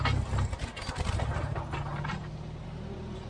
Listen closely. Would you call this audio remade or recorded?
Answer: recorded